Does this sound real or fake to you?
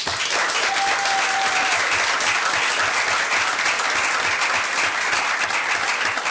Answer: real